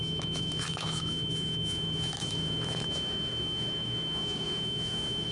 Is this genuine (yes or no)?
no